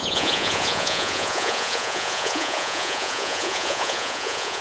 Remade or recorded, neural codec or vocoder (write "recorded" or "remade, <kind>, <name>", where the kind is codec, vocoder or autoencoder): remade, vocoder, Vocos